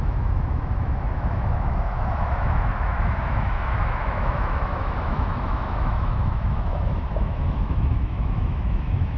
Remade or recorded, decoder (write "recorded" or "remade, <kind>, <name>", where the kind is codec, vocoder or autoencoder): remade, autoencoder, DAC-VAE